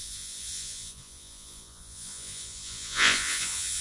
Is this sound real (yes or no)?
no